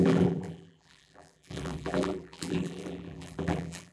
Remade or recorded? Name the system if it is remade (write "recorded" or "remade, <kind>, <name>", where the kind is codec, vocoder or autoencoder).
remade, vocoder, BigVGAN v2